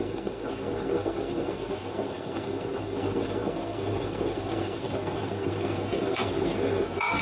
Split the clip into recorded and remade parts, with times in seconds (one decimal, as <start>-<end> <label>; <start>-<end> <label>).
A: 0.0-7.2 remade